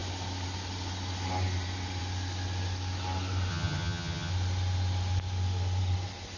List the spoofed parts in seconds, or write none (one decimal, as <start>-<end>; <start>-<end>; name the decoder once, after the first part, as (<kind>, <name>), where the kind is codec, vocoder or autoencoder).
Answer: 3.5-4.3 (vocoder, HiFi-GAN)